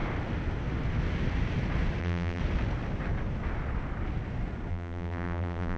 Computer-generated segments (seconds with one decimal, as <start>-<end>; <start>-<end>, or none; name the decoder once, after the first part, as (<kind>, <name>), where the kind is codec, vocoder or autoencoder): 2.0-2.4 (vocoder, BigVGAN v2); 4.7-5.8